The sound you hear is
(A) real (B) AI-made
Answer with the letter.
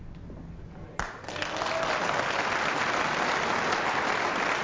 A